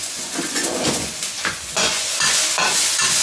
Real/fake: fake